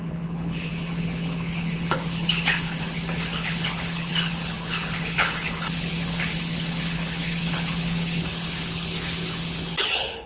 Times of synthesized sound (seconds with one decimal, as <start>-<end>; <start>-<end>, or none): 0.0-10.3